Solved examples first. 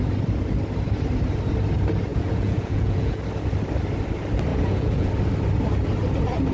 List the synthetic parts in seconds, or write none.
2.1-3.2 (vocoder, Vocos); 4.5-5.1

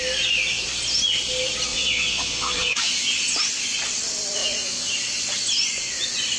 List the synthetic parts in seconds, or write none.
1.7-2.9 (vocoder, Vocos); 4.4-4.9

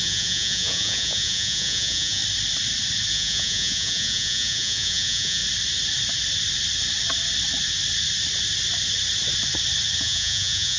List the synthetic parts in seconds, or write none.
0.0-2.2 (vocoder, Vocos); 3.1-5.4; 10.0-10.8

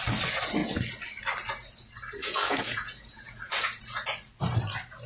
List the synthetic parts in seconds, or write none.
2.2-3.8 (vocoder, Vocos)